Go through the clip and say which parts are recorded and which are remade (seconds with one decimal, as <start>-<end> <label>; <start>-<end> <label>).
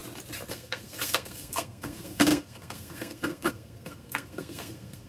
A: 0.0-0.5 recorded; 0.5-5.1 remade